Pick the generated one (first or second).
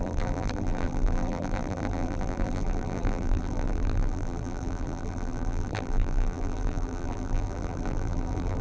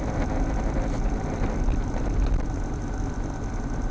first